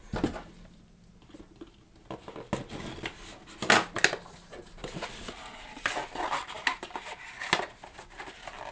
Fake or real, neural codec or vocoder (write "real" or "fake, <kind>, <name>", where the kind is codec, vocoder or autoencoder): real